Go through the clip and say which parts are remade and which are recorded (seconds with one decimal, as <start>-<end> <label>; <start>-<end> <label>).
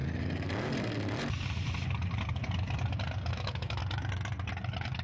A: 0.0-3.3 recorded; 3.3-3.8 remade; 3.8-5.0 recorded